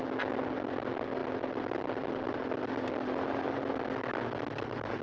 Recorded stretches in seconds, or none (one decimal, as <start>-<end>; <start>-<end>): 0.0-5.0